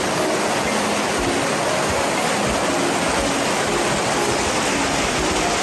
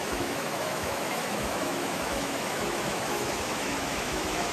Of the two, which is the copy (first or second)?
second